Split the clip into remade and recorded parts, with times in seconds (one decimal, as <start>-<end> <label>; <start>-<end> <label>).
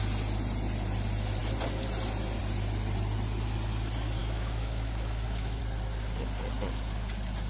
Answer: 0.0-4.2 recorded; 4.2-5.6 remade; 5.6-7.5 recorded